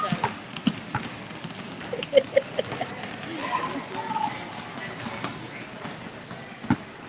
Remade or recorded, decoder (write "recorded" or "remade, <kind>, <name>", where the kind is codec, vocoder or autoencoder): recorded